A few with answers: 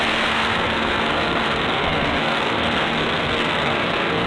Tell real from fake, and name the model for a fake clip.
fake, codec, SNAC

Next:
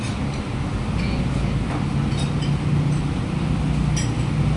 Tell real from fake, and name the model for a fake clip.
real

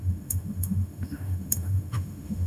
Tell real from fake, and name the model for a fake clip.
fake, autoencoder, DAC-VAE